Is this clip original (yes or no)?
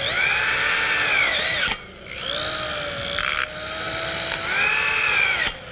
yes